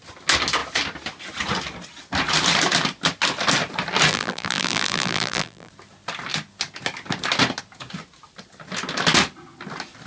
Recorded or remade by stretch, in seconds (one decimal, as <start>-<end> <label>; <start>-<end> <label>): 0.0-4.1 recorded; 4.1-5.7 remade; 5.7-10.1 recorded